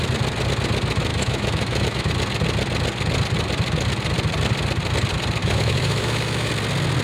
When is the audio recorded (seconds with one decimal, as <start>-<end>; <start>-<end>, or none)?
0.0-1.1; 2.1-5.4; 6.5-7.0